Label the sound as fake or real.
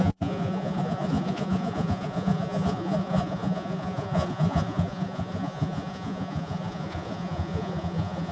fake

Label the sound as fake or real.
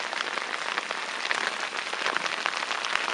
real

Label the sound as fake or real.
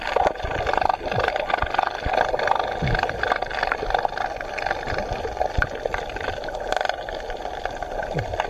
real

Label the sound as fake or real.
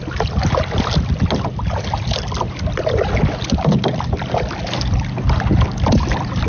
real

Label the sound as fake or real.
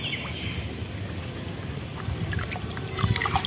real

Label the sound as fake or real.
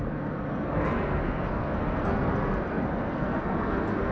fake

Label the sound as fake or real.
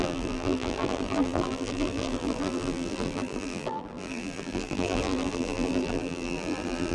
fake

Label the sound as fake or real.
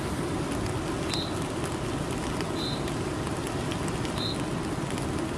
real